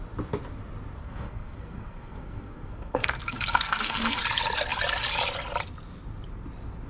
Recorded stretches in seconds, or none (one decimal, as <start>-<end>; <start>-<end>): 0.0-1.0; 4.2-6.9